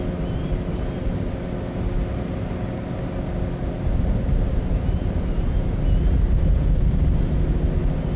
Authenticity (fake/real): real